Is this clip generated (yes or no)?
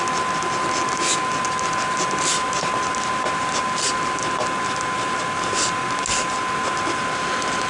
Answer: no